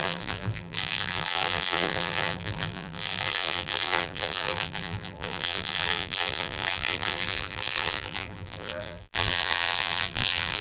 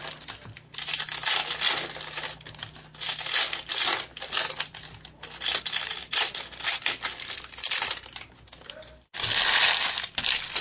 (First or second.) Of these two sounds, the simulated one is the first